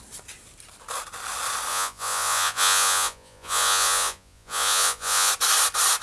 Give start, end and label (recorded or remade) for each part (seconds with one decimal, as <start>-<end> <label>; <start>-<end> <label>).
0.0-1.7 recorded; 1.7-5.3 remade; 5.3-6.0 recorded